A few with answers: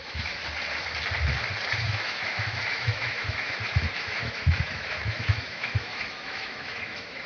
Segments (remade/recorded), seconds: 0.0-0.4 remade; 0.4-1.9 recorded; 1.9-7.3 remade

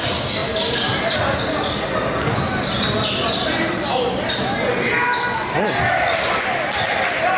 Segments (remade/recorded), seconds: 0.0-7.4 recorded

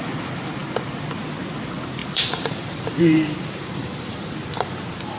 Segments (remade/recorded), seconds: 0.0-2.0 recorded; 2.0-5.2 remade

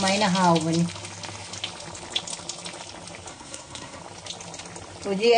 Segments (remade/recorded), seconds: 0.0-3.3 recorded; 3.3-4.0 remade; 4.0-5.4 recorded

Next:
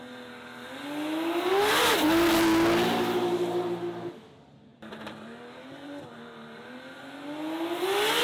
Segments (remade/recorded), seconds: 0.0-4.7 recorded; 4.7-7.0 remade; 7.0-8.2 recorded

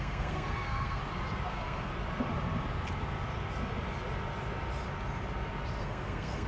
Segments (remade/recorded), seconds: 0.0-1.0 remade; 1.0-1.5 recorded; 1.5-1.9 remade; 1.9-5.8 recorded; 5.8-6.5 remade

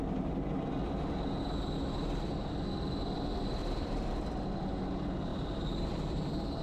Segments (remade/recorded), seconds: 0.0-3.6 recorded; 3.6-4.1 remade; 4.1-5.3 recorded; 5.3-6.6 remade